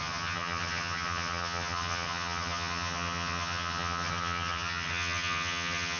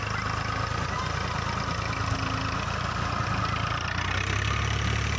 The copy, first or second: first